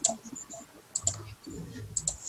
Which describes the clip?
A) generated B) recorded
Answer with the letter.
B